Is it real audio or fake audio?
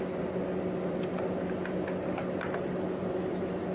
real